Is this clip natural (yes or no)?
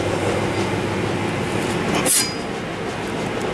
yes